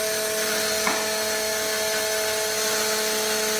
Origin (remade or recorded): recorded